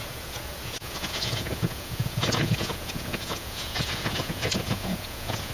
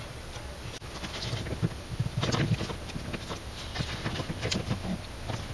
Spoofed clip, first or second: first